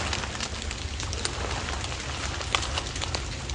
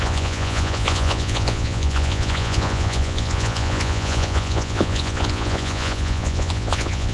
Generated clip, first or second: second